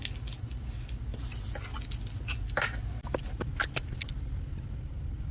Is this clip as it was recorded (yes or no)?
yes